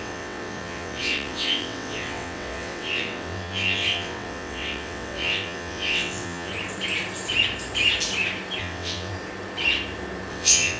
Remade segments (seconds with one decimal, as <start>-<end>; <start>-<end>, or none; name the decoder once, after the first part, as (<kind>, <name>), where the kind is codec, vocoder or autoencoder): 0.0-6.5 (vocoder, WaveNeXt); 8.6-9.1; 10.3-10.8